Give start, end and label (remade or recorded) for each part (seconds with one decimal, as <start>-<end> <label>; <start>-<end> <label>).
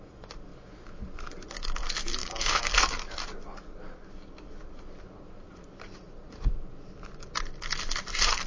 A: 0.0-2.2 recorded; 2.2-2.7 remade; 2.7-8.5 recorded